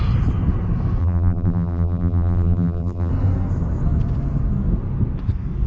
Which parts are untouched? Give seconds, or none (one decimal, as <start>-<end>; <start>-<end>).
0.0-1.0; 3.1-5.7